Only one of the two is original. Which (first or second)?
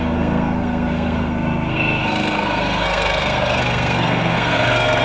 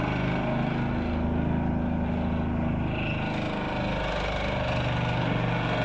second